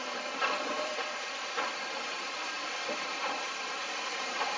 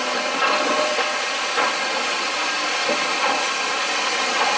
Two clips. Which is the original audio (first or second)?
second